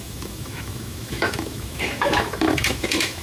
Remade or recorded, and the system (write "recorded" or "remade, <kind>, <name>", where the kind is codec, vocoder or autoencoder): remade, autoencoder, DAC-VAE